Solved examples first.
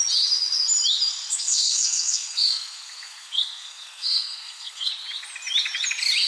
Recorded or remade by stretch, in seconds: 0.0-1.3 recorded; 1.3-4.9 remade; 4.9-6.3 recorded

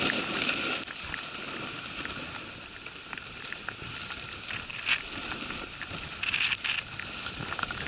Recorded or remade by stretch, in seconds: 0.0-7.9 recorded

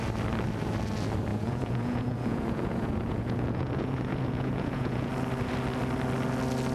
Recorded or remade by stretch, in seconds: 0.0-1.3 recorded; 1.3-5.1 remade; 5.1-6.7 recorded

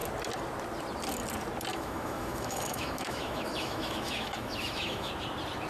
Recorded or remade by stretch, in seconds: 0.0-1.7 recorded; 1.7-5.1 remade; 5.1-5.7 recorded

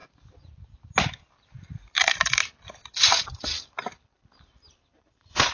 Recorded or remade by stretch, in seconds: 0.0-3.2 recorded; 3.2-5.5 remade

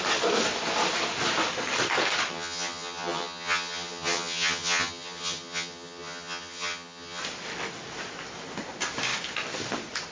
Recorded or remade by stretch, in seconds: 0.0-2.3 recorded; 2.3-7.2 remade; 7.2-10.1 recorded

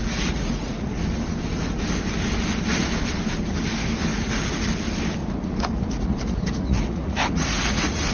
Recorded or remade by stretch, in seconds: 0.0-1.0 remade; 1.0-4.1 recorded; 4.1-4.6 remade; 4.6-5.2 recorded; 5.2-8.1 remade